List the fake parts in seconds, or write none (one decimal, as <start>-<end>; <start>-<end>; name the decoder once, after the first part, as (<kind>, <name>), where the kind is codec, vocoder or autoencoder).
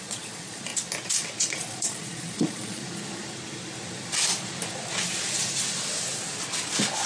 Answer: 0.0-0.7 (vocoder, Vocos); 1.4-2.8